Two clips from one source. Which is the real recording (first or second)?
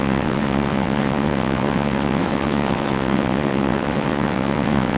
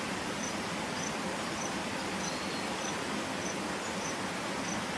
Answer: second